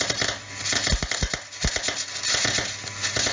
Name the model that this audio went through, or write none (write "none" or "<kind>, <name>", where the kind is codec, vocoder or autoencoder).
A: none